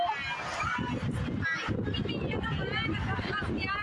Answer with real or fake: real